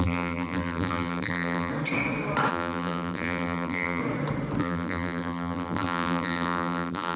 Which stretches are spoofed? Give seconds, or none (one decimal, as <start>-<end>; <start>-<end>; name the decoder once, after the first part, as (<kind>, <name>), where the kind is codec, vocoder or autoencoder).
0.0-1.7 (vocoder, BigVGAN v2); 2.5-4.0; 4.6-7.2